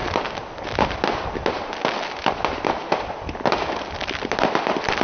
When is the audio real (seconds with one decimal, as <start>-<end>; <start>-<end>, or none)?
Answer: 0.0-5.0